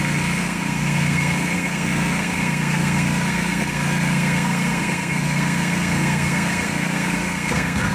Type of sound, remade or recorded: remade